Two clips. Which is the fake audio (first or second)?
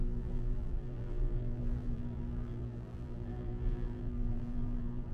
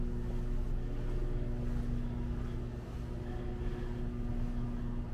first